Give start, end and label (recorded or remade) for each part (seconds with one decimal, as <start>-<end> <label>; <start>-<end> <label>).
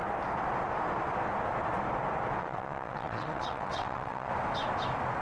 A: 0.0-2.4 recorded; 2.4-4.3 remade; 4.3-5.2 recorded